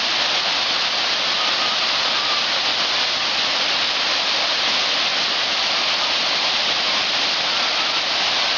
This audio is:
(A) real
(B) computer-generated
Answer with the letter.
A